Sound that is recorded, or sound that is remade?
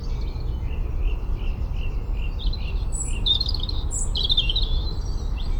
remade